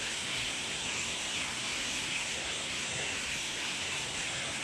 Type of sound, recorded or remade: remade